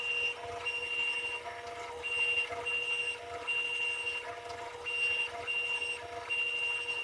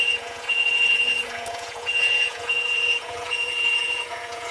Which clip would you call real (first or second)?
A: first